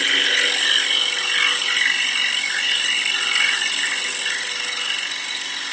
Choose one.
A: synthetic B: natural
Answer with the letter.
B